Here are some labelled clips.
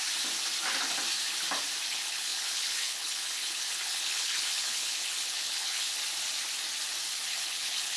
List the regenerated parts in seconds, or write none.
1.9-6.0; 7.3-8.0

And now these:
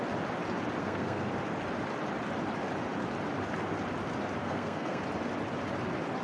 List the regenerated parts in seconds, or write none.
0.8-1.3; 4.4-5.0

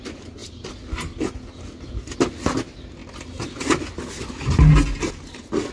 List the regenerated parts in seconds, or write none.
none

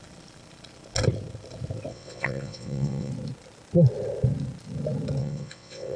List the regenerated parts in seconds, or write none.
1.9-3.1; 5.2-6.0